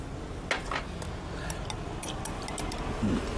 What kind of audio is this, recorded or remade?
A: recorded